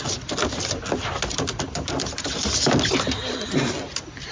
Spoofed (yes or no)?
no